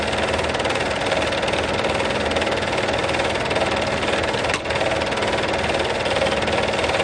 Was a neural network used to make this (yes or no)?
no